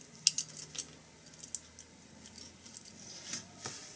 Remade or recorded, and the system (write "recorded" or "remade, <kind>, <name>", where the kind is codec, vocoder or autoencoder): recorded